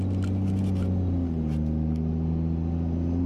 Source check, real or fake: real